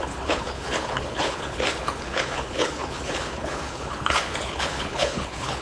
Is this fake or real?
fake